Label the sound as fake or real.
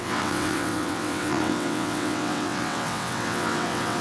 fake